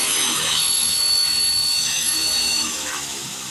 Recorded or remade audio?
remade